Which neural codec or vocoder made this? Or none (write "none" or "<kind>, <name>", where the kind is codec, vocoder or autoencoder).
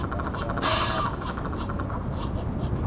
none